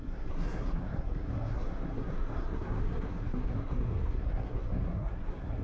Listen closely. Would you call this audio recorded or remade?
remade